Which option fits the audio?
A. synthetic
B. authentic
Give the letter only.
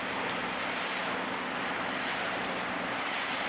B